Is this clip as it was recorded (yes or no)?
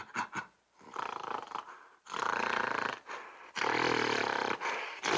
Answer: no